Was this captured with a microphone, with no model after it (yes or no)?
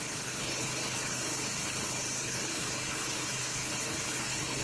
no